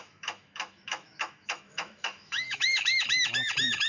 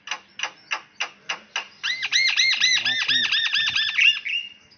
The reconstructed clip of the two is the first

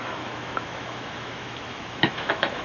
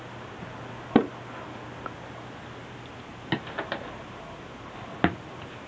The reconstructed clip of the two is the first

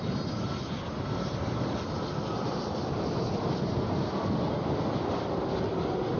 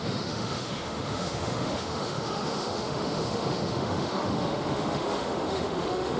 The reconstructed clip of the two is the second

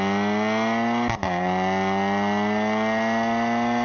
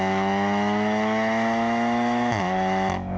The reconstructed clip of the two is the second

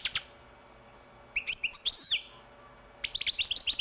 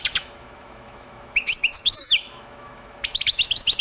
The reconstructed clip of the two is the second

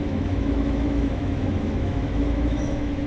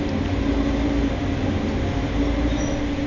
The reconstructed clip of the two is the first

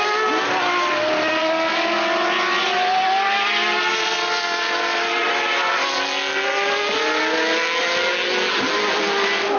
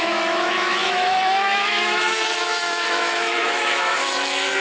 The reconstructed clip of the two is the second